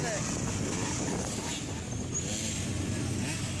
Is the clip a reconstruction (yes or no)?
no